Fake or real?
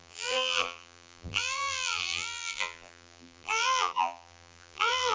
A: fake